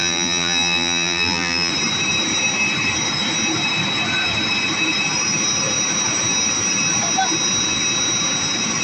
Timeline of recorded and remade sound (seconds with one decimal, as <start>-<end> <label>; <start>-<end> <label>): 0.0-1.7 remade; 1.7-8.8 recorded